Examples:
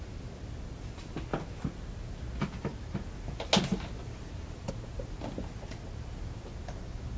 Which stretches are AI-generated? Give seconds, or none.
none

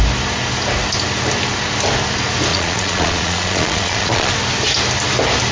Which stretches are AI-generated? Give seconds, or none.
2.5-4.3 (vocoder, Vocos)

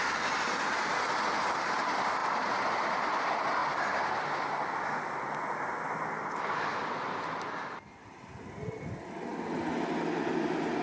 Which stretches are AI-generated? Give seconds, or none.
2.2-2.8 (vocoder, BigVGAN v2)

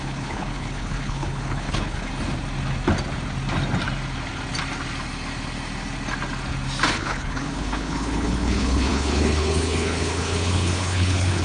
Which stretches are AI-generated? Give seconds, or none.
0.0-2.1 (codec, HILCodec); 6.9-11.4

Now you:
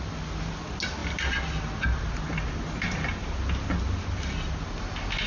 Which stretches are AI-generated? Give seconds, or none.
none

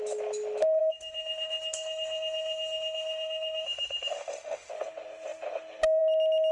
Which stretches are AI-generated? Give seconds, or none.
0.8-4.7 (autoencoder, DAC-VAE)